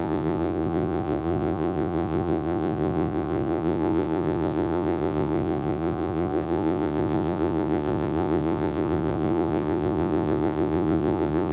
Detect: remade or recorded remade